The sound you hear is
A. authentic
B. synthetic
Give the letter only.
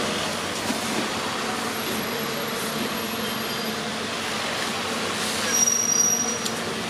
A